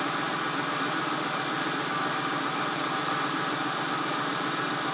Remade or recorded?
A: recorded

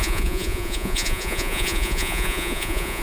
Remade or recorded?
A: remade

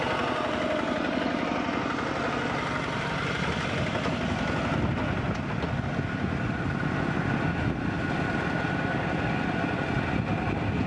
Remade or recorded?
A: recorded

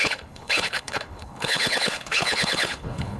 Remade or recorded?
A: remade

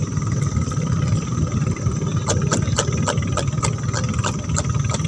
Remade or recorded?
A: recorded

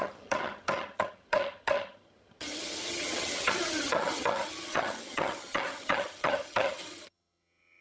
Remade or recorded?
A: remade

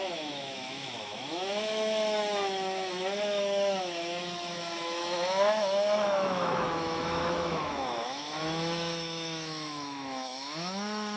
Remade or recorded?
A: remade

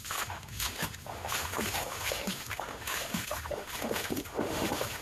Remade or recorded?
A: remade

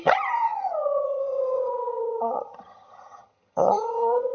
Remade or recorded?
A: remade